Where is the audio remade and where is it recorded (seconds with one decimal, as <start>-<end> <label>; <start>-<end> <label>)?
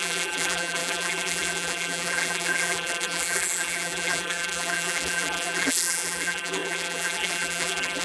0.0-8.0 remade